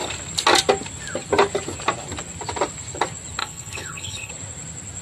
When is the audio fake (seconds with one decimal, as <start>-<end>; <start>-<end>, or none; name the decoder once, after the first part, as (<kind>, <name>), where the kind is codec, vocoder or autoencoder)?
3.4-4.3 (codec, HILCodec)